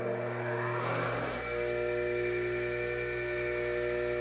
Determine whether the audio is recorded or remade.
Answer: recorded